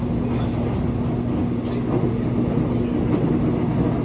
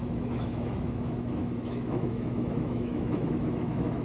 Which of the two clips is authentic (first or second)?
first